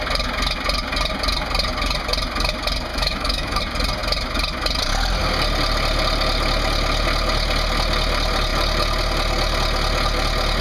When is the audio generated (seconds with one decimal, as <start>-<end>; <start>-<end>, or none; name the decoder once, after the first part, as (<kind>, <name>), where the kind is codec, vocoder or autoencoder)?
2.9-3.6 (autoencoder, DAC-VAE)